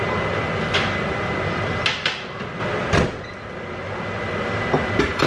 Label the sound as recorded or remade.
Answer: recorded